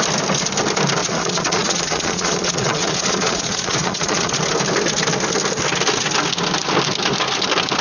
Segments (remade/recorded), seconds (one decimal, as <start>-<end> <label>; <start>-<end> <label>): 0.0-1.0 recorded; 1.0-4.4 remade; 4.4-7.8 recorded